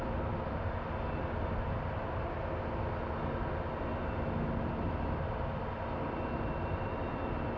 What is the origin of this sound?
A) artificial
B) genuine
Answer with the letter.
B